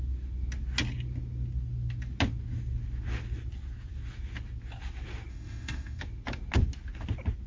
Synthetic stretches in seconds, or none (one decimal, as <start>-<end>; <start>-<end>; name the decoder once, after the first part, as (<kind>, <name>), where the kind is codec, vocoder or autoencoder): 5.3-6.0 (autoencoder, DAC-VAE)